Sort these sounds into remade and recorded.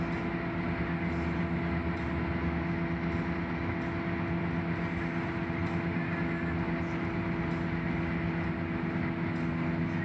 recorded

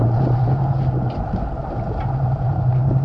recorded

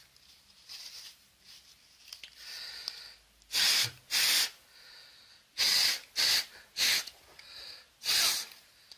recorded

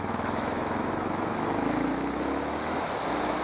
remade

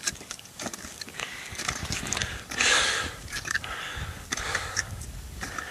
remade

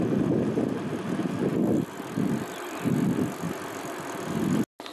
recorded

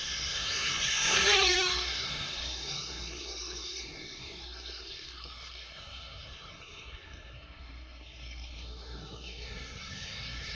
remade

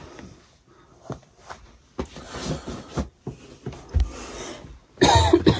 recorded